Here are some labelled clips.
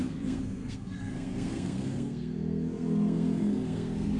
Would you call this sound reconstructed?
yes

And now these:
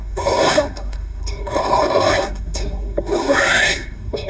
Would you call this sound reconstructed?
yes